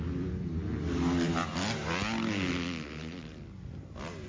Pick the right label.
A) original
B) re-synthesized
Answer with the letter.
A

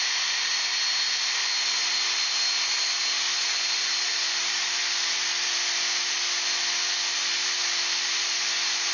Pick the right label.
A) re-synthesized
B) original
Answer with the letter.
B